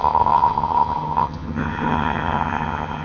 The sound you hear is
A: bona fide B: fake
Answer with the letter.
B